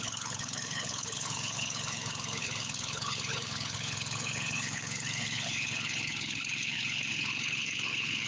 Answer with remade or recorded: remade